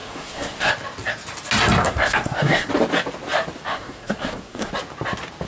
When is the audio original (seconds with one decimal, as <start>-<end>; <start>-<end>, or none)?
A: 0.7-1.8; 2.7-3.7; 4.7-5.5